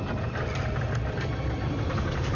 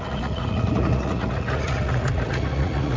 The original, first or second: first